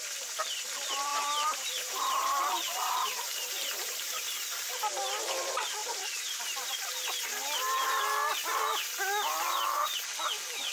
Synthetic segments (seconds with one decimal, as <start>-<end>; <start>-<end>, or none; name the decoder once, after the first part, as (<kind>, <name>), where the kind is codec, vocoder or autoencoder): 1.1-4.7 (vocoder, BigVGAN v2); 5.8-6.7